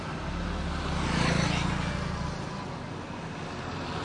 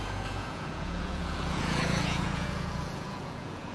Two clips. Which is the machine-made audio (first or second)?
second